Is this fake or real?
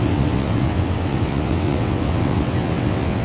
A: fake